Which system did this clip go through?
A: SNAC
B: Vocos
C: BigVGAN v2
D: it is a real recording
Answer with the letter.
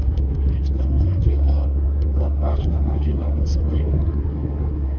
A